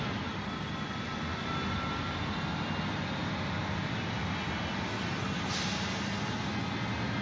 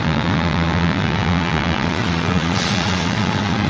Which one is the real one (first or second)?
first